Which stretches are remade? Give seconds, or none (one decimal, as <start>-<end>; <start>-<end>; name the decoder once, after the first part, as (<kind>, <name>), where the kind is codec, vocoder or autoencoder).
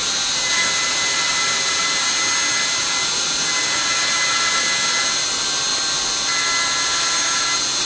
none